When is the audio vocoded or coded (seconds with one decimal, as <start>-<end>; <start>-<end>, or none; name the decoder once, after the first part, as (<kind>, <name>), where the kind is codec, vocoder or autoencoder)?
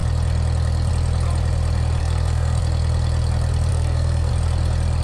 2.0-2.6 (codec, SNAC); 3.7-4.3